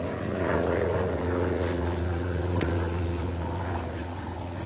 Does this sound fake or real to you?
fake